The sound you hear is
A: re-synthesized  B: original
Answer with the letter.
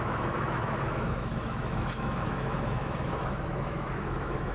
A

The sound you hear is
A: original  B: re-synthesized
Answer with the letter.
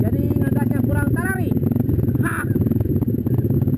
A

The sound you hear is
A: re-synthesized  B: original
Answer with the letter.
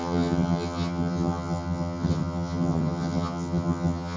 A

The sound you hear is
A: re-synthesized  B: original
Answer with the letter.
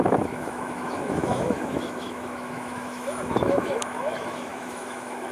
A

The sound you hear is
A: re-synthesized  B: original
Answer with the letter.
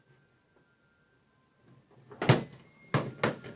B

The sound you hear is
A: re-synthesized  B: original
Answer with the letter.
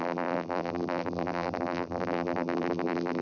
A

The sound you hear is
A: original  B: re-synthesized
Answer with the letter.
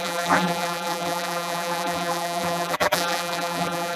B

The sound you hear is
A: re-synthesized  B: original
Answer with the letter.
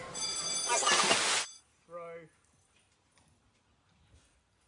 B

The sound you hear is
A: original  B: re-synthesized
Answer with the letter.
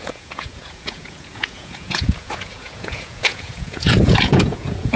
B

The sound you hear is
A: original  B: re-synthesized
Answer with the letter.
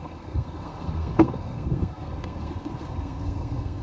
B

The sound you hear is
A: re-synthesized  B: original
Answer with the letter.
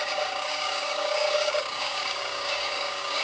A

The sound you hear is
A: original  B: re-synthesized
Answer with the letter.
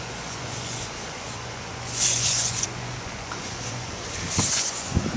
B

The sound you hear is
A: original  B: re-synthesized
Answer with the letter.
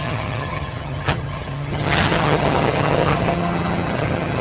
B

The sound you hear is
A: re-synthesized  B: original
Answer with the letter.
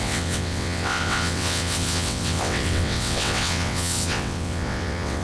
A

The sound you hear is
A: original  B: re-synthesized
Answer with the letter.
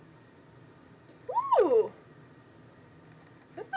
A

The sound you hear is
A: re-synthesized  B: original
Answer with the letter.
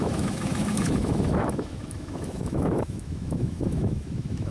A